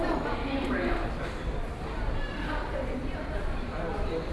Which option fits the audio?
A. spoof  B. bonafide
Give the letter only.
A